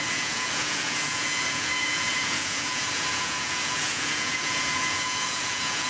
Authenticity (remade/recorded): remade